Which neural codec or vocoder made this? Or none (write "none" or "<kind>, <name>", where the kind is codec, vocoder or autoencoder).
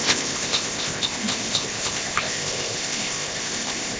codec, ZipCodec